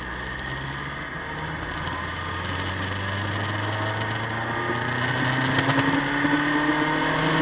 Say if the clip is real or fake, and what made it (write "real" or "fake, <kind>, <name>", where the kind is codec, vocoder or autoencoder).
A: real